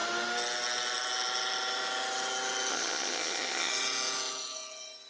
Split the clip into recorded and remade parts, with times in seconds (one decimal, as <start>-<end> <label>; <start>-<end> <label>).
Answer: 0.0-2.7 recorded; 2.7-3.7 remade; 3.7-5.1 recorded